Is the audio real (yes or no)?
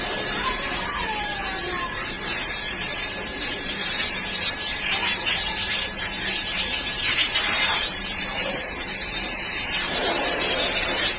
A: no